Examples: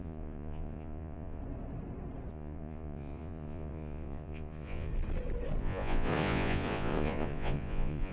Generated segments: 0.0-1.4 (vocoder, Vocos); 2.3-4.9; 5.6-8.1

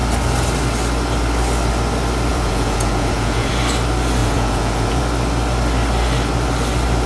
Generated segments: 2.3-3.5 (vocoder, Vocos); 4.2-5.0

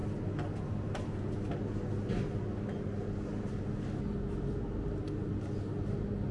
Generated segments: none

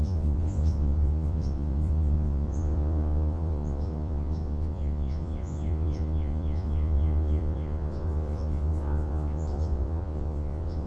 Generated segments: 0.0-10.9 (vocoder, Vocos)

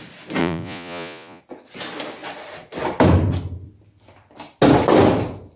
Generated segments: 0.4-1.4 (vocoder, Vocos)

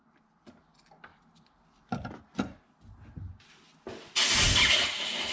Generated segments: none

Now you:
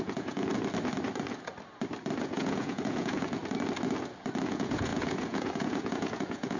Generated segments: 0.0-0.5 (vocoder, Vocos); 2.2-3.4; 4.4-6.6